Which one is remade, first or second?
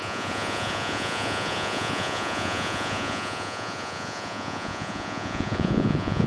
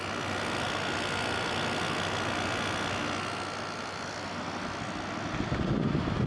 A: first